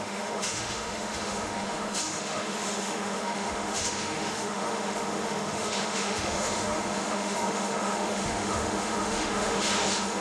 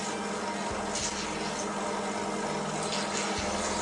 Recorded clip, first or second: second